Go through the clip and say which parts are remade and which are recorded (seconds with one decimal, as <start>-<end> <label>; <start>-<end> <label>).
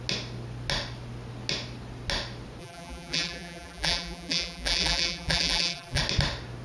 0.0-2.6 recorded; 2.6-6.0 remade; 6.0-6.6 recorded